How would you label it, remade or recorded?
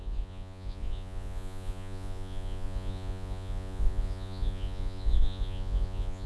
remade